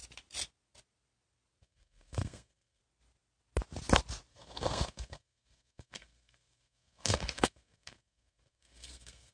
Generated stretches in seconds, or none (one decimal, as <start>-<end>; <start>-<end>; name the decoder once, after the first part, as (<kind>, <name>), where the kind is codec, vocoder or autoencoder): 1.6-2.8 (codec, SNAC); 4.3-9.3